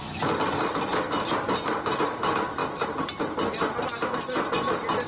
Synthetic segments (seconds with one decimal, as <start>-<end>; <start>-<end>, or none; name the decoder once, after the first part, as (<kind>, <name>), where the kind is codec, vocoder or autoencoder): none